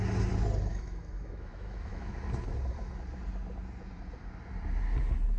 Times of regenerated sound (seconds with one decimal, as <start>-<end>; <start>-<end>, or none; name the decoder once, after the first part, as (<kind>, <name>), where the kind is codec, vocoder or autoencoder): 0.7-2.2 (autoencoder, DAC-VAE)